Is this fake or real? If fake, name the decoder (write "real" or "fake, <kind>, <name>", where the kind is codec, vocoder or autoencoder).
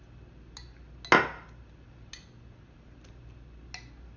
real